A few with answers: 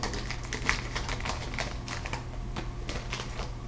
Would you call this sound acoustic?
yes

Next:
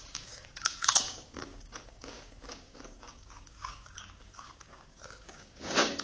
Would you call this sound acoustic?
no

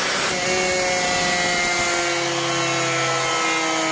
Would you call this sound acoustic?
yes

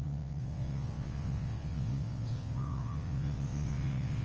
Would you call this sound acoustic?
no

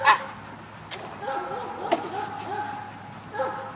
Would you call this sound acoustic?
yes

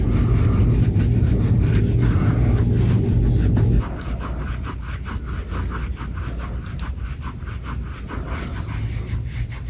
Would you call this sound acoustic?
yes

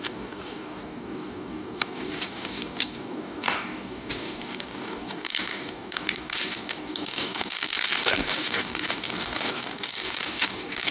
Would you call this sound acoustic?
no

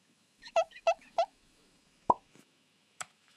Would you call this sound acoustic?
no